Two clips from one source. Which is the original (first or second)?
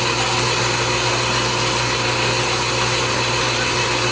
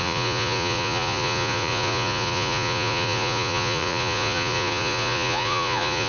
first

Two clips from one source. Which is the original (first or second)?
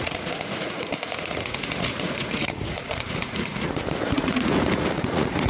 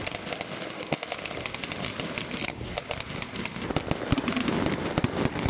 second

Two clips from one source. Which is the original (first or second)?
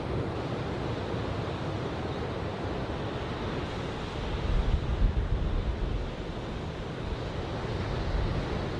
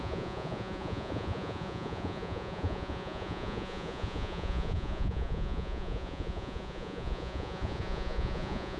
first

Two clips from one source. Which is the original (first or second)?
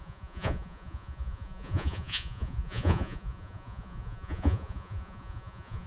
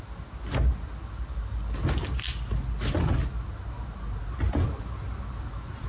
second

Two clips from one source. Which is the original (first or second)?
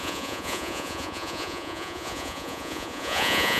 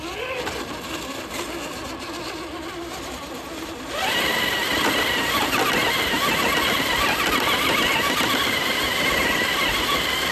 second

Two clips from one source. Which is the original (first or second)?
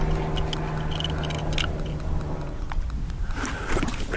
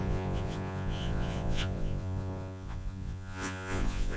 first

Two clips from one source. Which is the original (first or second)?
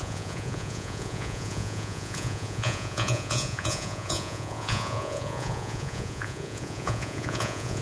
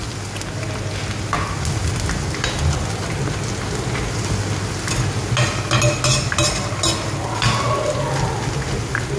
second